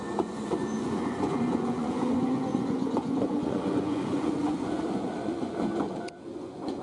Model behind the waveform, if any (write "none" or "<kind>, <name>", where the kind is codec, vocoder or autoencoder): vocoder, Vocos